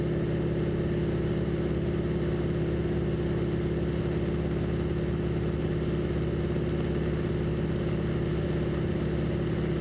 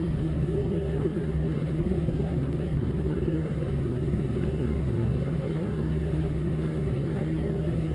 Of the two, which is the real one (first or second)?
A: first